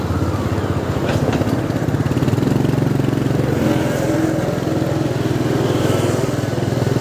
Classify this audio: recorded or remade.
recorded